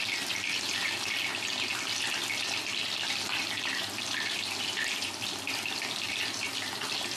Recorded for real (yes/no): yes